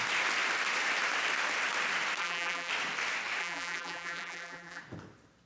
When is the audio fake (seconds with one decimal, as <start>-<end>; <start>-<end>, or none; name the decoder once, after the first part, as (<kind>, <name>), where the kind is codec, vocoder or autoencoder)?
2.2-2.7 (vocoder, BigVGAN v2); 3.4-4.8